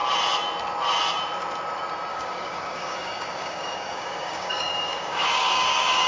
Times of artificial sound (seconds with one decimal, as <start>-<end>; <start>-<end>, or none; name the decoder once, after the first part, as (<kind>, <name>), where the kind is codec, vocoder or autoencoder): 2.1-6.1 (codec, DAC)